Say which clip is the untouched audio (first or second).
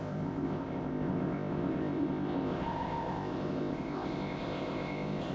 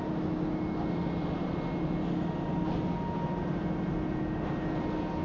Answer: second